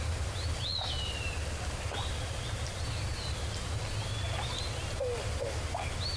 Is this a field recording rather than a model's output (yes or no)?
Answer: yes